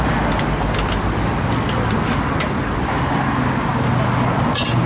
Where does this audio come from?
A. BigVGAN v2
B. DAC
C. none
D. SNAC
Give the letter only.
C